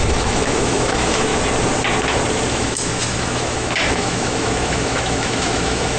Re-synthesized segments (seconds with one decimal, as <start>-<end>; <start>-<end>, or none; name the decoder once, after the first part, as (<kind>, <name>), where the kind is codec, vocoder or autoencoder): 0.0-1.3 (autoencoder, DAC-VAE); 2.5-6.0